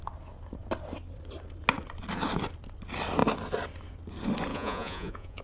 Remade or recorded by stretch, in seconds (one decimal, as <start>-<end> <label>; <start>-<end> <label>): 0.0-4.5 recorded; 4.5-5.4 remade